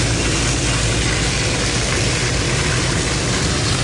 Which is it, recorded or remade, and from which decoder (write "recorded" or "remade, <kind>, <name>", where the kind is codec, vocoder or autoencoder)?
recorded